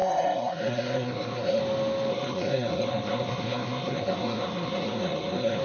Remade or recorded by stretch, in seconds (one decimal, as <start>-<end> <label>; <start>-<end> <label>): 0.0-1.6 remade; 1.6-2.1 recorded; 2.1-5.6 remade